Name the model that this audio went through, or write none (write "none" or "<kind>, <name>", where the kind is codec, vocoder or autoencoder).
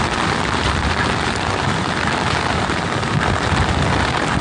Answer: vocoder, BigVGAN v2